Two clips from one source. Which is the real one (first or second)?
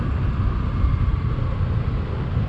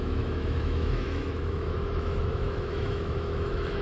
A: first